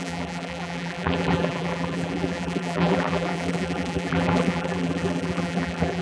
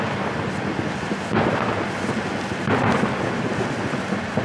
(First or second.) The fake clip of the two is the first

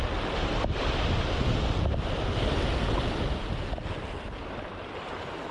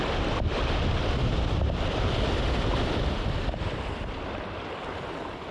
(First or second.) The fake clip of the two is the second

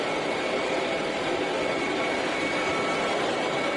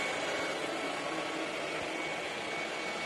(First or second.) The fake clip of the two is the first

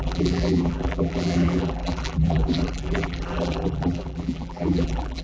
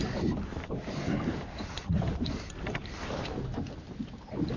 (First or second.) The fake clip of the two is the first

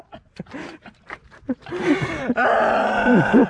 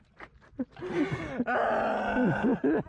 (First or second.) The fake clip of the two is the first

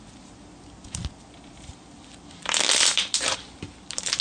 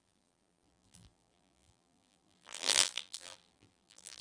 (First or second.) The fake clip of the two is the second